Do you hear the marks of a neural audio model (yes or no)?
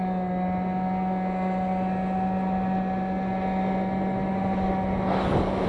no